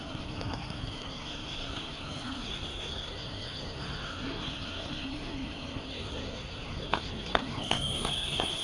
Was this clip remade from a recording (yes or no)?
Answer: yes